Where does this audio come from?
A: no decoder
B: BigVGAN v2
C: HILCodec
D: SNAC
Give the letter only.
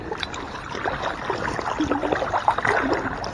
A